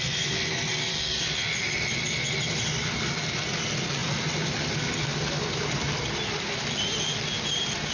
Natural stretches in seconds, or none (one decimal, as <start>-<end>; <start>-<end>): 0.0-7.9